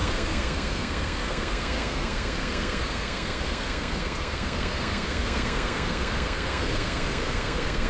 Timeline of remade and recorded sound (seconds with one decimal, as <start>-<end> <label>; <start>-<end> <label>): 0.0-7.9 remade